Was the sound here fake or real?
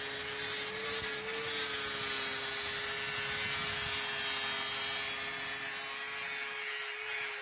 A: real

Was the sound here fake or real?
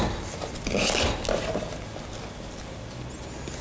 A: real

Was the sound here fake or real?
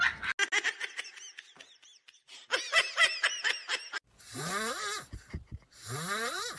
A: real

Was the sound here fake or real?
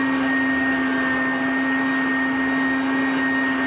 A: real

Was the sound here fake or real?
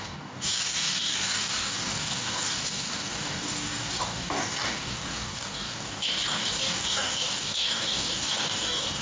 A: fake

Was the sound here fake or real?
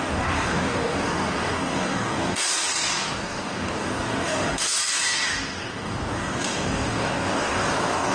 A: fake